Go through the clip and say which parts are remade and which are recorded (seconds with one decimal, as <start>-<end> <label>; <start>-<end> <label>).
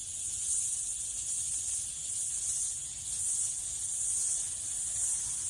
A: 0.0-0.7 remade; 0.7-5.5 recorded